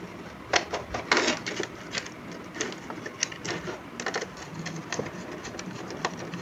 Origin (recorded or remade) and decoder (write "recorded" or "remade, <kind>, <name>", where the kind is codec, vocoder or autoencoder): recorded